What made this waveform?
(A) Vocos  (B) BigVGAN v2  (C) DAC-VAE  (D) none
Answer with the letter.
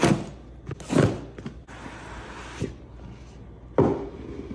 D